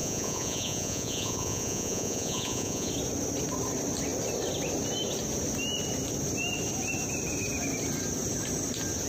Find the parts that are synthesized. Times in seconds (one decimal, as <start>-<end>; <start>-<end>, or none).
0.0-2.9

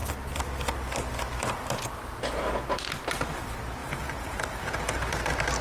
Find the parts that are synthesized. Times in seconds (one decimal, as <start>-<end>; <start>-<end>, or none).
3.8-5.1

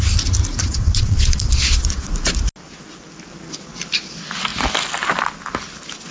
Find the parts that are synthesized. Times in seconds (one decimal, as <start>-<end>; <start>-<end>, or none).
0.6-2.1